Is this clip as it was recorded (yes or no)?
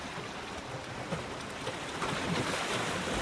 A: yes